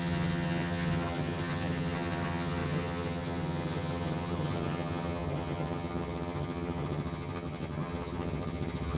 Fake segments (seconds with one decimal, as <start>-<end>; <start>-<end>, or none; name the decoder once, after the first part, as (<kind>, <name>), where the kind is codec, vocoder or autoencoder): 0.0-9.0 (vocoder, HiFi-GAN)